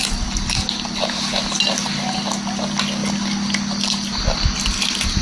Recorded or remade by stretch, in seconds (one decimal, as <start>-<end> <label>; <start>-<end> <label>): 0.0-5.2 recorded